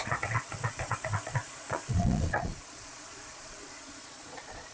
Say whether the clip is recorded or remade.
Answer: remade